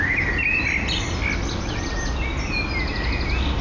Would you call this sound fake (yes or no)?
no